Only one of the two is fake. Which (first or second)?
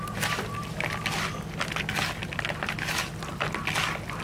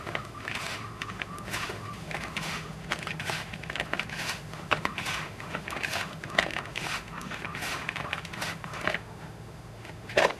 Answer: second